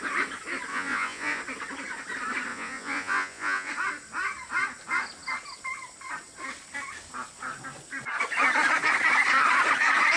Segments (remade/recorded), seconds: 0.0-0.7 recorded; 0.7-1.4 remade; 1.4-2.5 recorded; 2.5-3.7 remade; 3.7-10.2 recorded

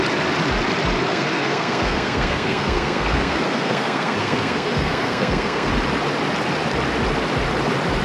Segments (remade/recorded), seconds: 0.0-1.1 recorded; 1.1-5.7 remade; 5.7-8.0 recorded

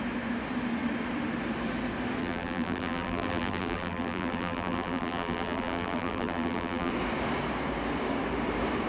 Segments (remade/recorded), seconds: 0.0-2.2 recorded; 2.2-6.9 remade; 6.9-8.9 recorded

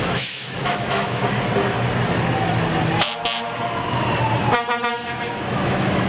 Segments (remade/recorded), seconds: 0.0-1.2 remade; 1.2-4.9 recorded; 4.9-6.1 remade